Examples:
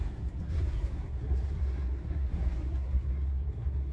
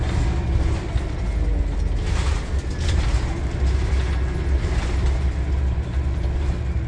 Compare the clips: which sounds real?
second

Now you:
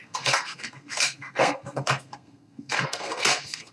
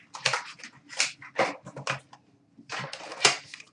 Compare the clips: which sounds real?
second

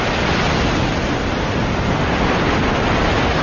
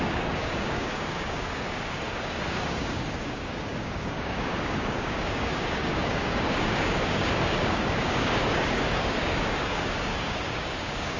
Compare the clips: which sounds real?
first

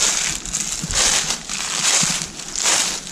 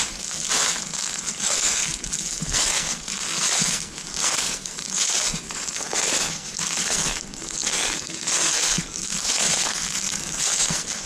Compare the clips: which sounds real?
first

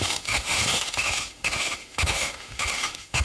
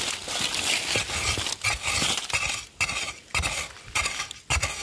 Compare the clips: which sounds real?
second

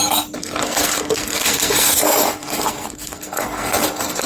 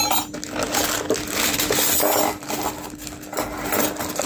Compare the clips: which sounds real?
second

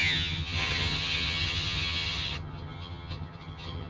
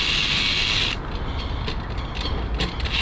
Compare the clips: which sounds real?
second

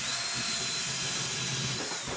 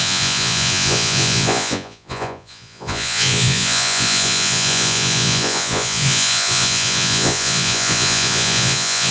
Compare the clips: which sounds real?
first